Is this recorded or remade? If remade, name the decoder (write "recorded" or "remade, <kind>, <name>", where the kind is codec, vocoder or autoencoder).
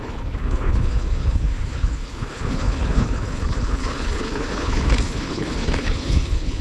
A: remade, codec, HILCodec